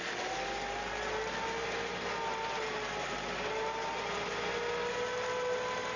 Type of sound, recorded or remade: recorded